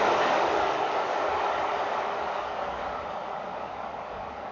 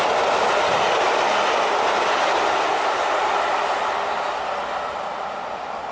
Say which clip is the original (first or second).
second